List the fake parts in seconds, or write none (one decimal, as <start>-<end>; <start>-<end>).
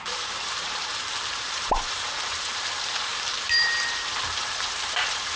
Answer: 0.0-5.4